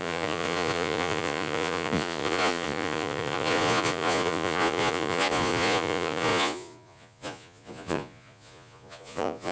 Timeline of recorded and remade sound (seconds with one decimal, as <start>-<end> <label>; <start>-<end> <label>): 0.0-9.5 remade